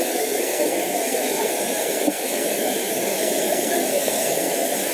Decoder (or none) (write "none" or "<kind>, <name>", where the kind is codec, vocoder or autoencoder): codec, SNAC